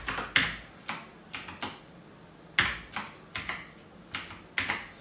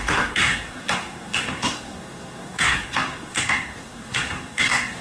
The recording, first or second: first